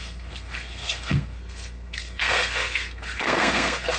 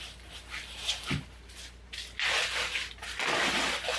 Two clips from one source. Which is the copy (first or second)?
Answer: first